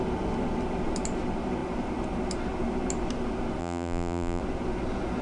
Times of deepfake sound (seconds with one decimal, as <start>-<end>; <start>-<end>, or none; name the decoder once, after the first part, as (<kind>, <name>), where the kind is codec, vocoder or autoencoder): 3.6-4.4 (vocoder, BigVGAN v2)